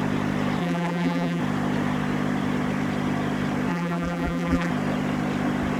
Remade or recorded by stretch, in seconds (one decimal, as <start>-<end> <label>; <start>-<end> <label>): 0.0-0.6 recorded; 0.6-1.4 remade; 1.4-3.7 recorded; 3.7-4.7 remade; 4.7-5.8 recorded